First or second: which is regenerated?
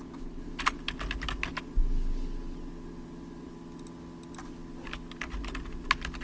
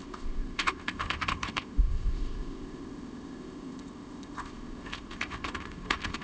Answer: second